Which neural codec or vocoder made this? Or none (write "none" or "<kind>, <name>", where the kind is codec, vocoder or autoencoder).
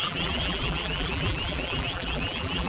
vocoder, BigVGAN v2